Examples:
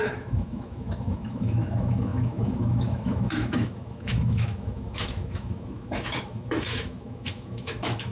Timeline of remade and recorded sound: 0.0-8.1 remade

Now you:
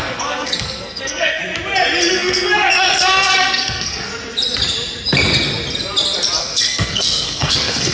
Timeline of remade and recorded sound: 0.0-1.4 remade; 1.4-2.0 recorded; 2.0-4.1 remade; 4.1-6.4 recorded; 6.4-7.9 remade

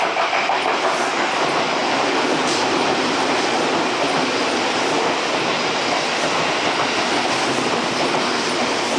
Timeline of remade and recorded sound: 0.0-1.8 recorded; 1.8-3.3 remade; 3.3-9.0 recorded

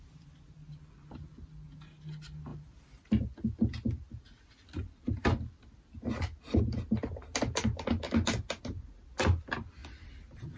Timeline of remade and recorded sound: 0.0-2.5 recorded; 2.5-5.6 remade; 5.6-10.6 recorded